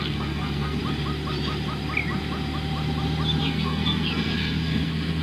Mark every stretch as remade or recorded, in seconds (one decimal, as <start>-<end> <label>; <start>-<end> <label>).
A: 0.0-0.8 remade; 0.8-3.4 recorded; 3.4-5.2 remade